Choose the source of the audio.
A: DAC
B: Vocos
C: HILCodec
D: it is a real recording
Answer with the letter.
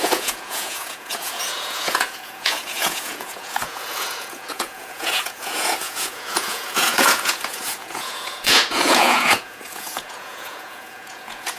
B